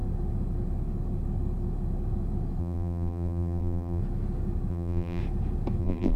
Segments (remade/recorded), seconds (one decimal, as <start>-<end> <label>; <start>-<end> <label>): 0.0-2.6 recorded; 2.6-4.0 remade; 4.0-4.7 recorded; 4.7-5.2 remade; 5.2-5.8 recorded; 5.8-6.2 remade